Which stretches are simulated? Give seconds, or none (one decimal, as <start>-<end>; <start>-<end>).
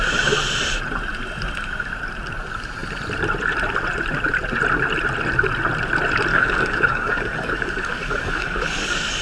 6.3-9.2